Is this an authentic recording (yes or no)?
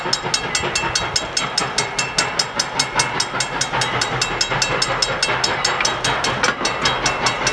yes